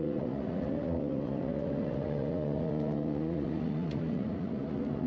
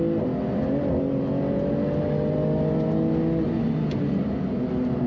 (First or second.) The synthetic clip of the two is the first